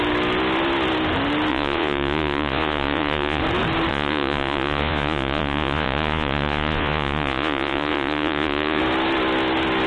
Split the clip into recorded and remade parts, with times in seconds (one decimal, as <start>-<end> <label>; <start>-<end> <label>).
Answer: 0.0-1.5 recorded; 1.5-3.4 remade; 3.4-3.9 recorded; 3.9-8.8 remade; 8.8-9.9 recorded